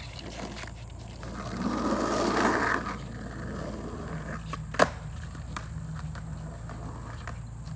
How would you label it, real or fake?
real